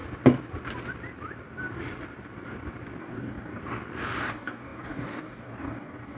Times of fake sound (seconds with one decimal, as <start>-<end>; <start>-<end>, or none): 3.0-3.6; 4.2-6.2